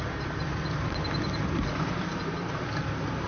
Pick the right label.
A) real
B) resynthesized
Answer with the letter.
A